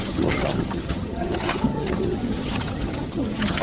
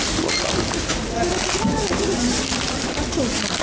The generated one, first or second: first